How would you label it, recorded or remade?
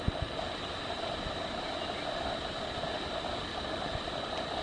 recorded